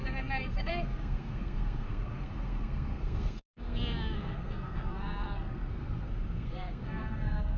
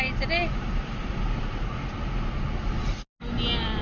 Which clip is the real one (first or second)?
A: second